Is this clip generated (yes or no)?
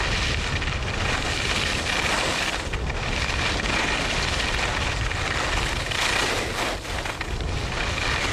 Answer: no